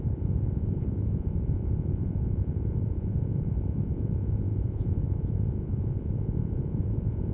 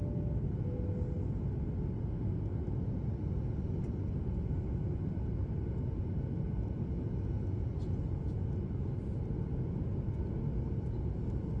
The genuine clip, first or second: second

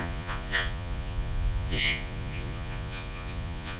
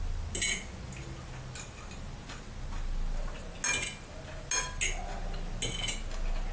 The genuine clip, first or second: second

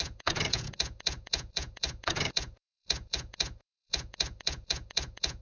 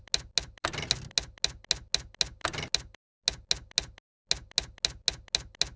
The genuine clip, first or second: second